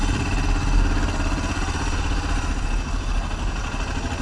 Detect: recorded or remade recorded